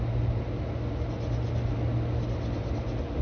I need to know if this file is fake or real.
real